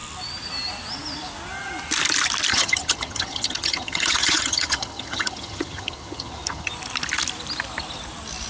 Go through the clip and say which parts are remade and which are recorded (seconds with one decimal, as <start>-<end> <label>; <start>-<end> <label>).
0.0-2.5 recorded; 2.5-6.7 remade; 6.7-8.5 recorded